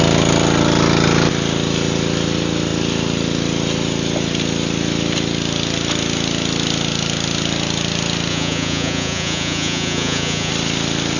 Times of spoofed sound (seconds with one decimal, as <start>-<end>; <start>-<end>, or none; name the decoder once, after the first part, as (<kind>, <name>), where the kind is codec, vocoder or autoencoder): 8.3-10.5 (vocoder, Vocos)

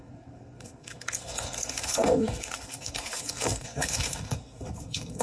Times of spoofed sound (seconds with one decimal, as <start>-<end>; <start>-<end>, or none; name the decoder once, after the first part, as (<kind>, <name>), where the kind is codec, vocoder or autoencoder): 0.0-5.2 (codec, SNAC)

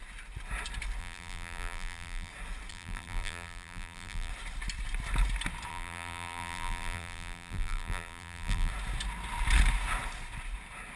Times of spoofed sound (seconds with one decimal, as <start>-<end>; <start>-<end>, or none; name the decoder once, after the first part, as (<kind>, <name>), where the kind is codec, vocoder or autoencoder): 1.0-2.3 (vocoder, BigVGAN v2); 2.7-4.3; 5.7-8.7

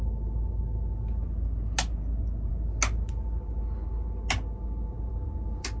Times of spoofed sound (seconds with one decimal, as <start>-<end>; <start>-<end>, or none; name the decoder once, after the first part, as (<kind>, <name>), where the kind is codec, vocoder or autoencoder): none

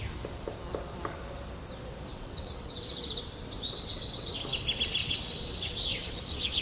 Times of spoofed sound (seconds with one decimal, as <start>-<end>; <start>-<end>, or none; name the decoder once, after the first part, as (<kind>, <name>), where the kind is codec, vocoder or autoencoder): 2.1-4.3 (vocoder, WaveNeXt); 5.0-6.6

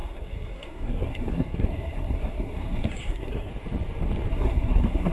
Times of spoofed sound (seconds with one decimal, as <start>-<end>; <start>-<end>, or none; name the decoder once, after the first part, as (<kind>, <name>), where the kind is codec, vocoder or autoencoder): 0.0-3.5 (codec, SNAC); 4.3-5.1

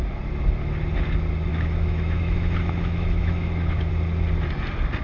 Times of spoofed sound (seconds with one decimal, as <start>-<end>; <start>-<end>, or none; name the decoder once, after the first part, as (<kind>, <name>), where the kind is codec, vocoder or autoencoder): 1.5-3.9 (autoencoder, DAC-VAE)